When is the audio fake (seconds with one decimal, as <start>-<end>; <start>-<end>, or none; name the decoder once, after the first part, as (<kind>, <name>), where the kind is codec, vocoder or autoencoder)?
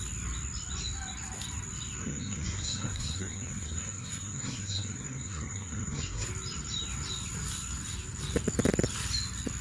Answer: 2.0-6.3 (codec, SNAC)